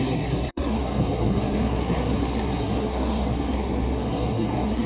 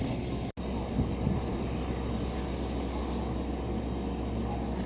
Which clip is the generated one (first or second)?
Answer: first